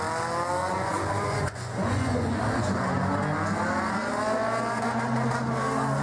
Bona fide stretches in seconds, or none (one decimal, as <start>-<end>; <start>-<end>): 0.0-0.6; 2.4-6.0